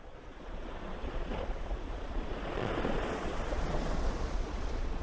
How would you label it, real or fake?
fake